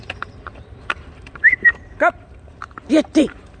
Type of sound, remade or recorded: remade